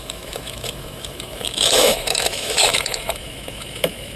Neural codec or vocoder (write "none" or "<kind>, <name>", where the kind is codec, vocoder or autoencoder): autoencoder, DAC-VAE